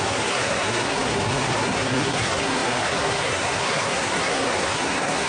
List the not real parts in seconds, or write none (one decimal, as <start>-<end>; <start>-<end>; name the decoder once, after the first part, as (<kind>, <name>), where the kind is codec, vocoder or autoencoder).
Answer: 0.0-5.3 (codec, SNAC)